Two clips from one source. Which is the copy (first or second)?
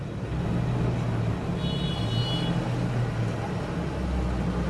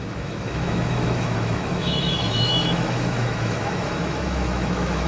second